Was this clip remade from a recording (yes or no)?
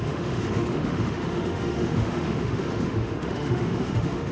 yes